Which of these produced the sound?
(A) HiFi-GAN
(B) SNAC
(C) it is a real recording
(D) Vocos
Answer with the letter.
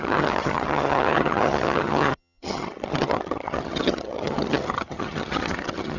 A